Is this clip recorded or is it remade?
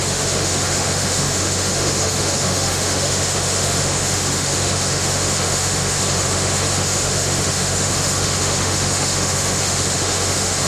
remade